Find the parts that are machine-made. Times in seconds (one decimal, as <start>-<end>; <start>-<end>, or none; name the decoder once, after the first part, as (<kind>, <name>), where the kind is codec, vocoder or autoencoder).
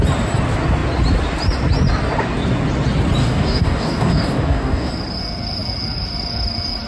3.2-4.9 (codec, DAC)